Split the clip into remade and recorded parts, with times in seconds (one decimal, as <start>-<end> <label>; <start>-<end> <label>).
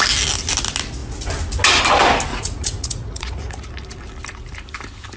0.0-2.3 recorded; 2.3-3.7 remade; 3.7-5.2 recorded